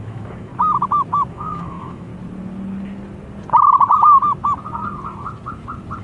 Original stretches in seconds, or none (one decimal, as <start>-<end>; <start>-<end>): 0.5-1.3; 2.1-6.0

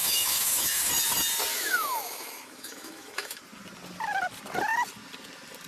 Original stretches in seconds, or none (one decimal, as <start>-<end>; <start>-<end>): 0.9-1.5; 3.4-5.7

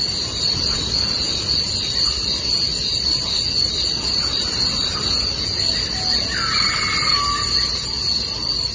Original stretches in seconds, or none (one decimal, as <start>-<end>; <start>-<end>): 0.0-8.7

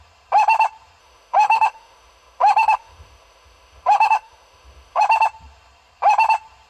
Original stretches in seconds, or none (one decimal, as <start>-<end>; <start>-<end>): 0.0-1.0; 5.0-6.7

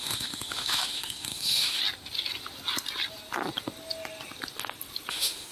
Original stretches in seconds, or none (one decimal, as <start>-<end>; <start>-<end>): 1.8-5.1

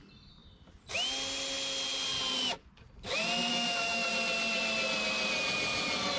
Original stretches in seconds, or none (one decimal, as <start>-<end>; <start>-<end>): 0.0-3.5; 4.1-6.2